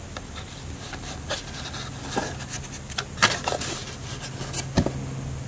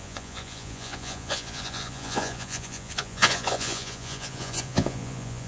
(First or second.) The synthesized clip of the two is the second